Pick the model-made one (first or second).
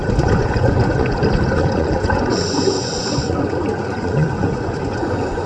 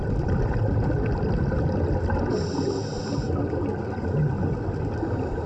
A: first